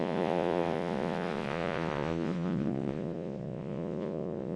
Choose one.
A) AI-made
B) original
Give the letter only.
A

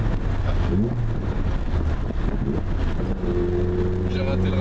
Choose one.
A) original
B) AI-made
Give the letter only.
A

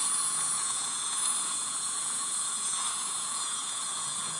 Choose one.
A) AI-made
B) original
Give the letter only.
A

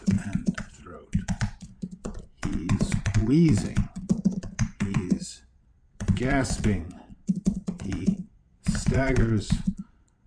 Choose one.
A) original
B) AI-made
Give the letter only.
B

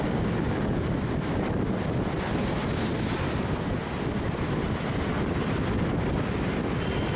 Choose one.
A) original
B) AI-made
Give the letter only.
A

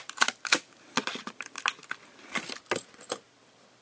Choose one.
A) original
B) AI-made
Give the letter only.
A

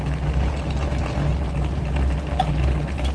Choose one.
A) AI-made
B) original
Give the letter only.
B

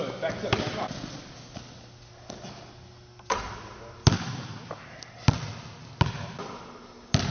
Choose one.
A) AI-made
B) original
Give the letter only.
B